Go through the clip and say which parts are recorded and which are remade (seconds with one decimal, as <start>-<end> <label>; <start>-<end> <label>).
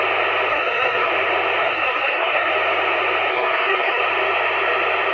0.0-0.5 recorded; 0.5-1.1 remade; 1.1-1.6 recorded; 1.6-2.5 remade; 2.5-3.3 recorded; 3.3-4.0 remade; 4.0-5.1 recorded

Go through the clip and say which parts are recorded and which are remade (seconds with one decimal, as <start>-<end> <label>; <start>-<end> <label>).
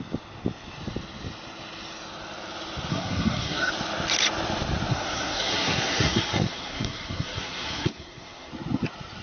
0.0-2.9 recorded; 2.9-3.7 remade; 3.7-4.9 recorded; 4.9-8.5 remade; 8.5-9.2 recorded